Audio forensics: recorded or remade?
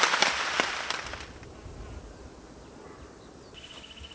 recorded